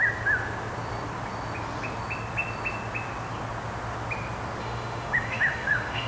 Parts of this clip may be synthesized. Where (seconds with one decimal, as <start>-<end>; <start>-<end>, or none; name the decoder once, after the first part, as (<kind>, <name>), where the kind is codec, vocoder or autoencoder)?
4.6-6.1 (autoencoder, DAC-VAE)